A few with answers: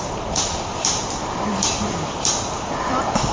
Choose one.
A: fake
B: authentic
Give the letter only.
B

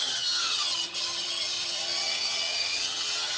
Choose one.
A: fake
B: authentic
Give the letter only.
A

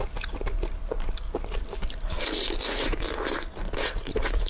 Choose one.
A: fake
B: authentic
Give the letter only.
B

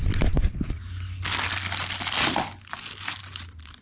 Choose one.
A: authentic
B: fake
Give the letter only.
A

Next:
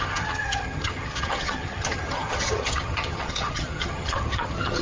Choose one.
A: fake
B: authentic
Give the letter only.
A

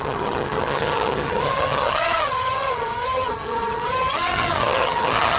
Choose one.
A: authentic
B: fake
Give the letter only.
B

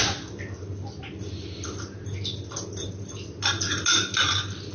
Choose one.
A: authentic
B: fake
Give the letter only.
A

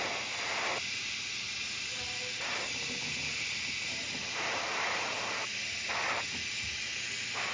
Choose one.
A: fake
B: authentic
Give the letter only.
B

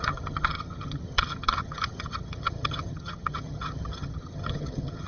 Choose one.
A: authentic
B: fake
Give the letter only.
B